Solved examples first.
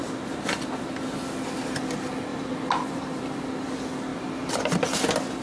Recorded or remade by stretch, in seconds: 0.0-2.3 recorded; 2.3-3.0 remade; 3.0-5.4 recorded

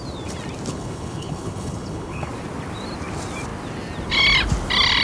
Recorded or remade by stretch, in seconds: 0.0-0.7 recorded; 0.7-2.3 remade; 2.3-5.0 recorded

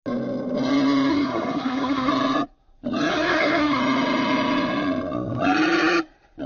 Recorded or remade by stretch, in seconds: 0.0-1.1 recorded; 1.1-2.1 remade; 2.1-3.1 recorded; 3.1-3.8 remade; 3.8-6.5 recorded